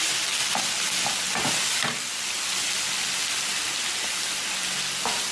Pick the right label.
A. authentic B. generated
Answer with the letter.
A